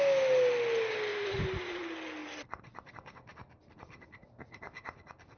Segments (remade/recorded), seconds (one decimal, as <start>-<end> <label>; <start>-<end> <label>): 0.0-1.1 recorded; 1.1-1.8 remade; 1.8-2.2 recorded; 2.2-2.9 remade; 2.9-5.4 recorded